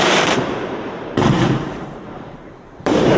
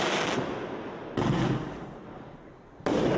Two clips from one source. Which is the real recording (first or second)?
second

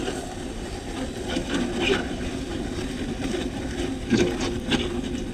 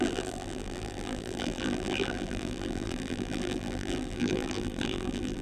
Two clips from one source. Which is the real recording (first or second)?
first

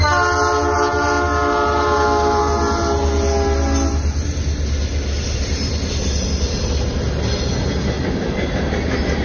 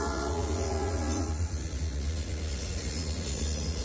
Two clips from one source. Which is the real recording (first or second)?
first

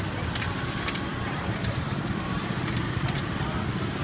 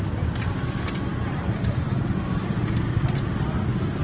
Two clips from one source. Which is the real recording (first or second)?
second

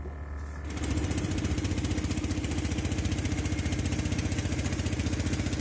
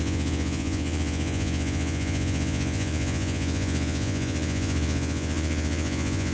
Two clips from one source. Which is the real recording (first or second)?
first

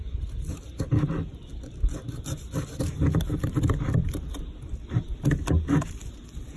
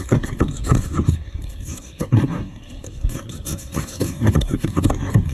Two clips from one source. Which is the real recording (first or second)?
first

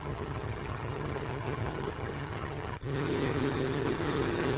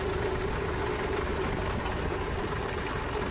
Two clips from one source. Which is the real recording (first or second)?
second